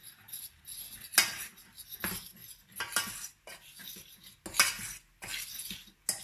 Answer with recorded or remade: recorded